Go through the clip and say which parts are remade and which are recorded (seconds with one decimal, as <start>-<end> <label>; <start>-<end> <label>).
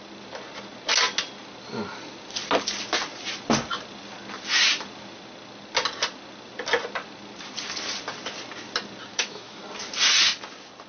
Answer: 0.0-9.1 recorded; 9.1-9.6 remade; 9.6-10.9 recorded